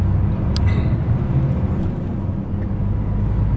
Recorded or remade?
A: recorded